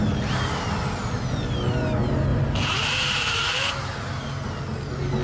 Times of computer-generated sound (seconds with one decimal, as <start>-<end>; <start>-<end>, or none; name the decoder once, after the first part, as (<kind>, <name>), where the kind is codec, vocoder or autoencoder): 2.3-3.7 (vocoder, BigVGAN v2)